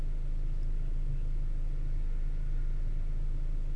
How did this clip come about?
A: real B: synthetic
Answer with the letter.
A